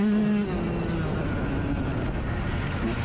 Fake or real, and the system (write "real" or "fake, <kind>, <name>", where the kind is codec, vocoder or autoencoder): real